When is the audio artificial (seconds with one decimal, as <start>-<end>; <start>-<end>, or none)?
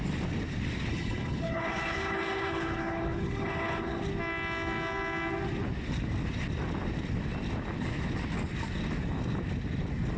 0.9-4.0